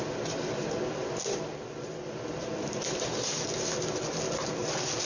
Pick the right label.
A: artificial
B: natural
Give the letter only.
B